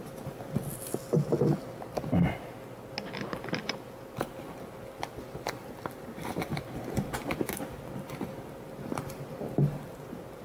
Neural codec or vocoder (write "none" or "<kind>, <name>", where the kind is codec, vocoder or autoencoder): none